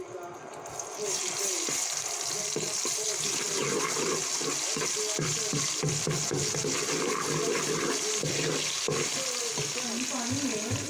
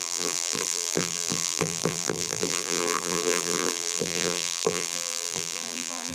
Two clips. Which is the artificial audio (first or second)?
second